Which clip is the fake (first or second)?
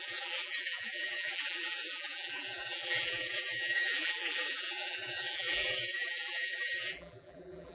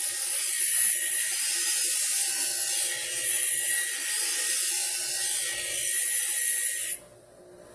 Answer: first